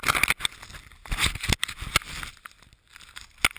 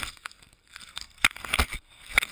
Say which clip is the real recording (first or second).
first